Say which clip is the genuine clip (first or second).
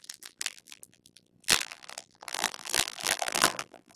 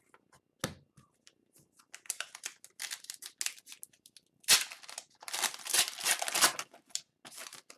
second